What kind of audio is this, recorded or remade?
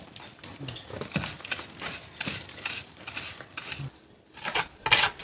recorded